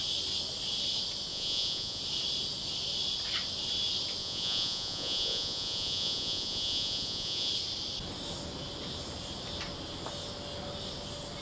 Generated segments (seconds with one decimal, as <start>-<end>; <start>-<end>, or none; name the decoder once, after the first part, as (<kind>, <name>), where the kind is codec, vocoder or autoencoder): 1.3-2.0 (vocoder, Vocos); 4.2-7.5